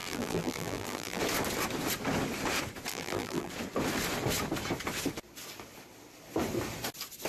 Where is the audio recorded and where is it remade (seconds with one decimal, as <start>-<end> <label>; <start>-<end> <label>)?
0.0-1.2 remade; 1.2-2.9 recorded; 2.9-3.5 remade; 3.5-7.3 recorded